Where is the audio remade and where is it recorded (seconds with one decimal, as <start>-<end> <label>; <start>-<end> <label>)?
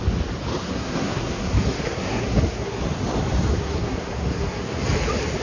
0.0-0.6 recorded; 0.6-2.8 remade; 2.8-3.5 recorded; 3.5-4.7 remade; 4.7-5.4 recorded